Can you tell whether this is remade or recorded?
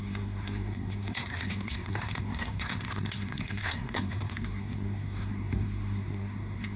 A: remade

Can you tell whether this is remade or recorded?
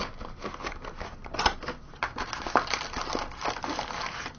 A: recorded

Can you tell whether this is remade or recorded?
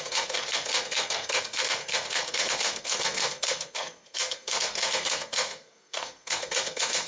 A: remade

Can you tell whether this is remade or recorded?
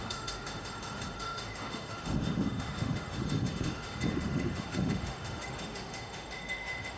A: remade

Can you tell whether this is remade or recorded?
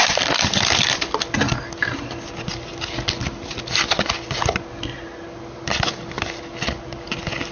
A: recorded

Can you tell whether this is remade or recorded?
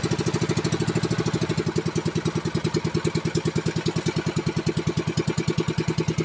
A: recorded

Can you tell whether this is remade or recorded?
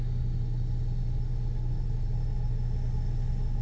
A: recorded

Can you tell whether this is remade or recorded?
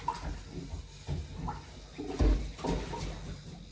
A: recorded